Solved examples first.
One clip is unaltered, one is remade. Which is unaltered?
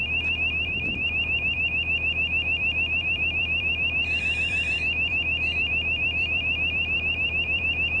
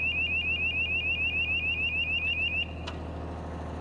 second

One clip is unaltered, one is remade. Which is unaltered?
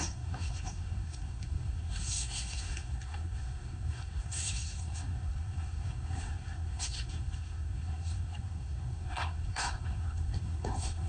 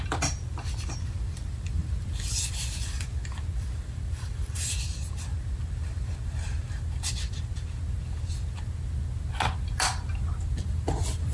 second